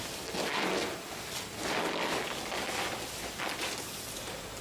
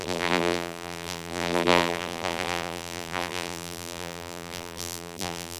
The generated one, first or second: second